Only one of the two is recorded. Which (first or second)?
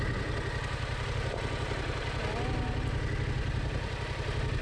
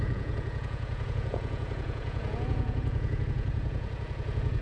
first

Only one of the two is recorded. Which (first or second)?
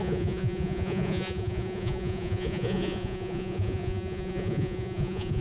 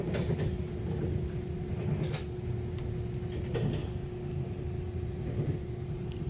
second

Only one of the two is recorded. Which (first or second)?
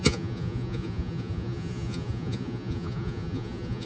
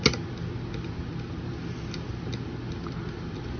second